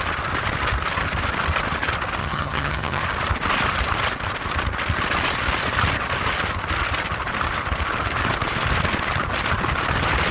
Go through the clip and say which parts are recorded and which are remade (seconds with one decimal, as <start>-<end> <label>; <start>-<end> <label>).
0.0-2.2 recorded; 2.2-3.0 remade; 3.0-10.3 recorded